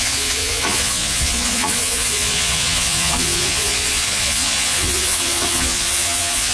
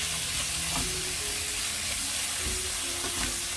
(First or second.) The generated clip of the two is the first